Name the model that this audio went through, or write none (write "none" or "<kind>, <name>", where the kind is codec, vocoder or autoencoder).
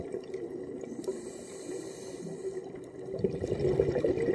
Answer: none